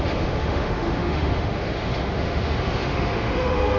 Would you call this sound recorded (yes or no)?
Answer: no